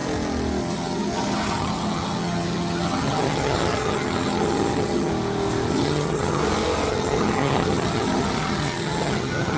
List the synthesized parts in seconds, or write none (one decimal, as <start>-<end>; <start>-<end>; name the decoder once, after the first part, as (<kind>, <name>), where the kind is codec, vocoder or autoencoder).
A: 0.6-5.1 (vocoder, HiFi-GAN); 5.7-6.4; 6.9-9.6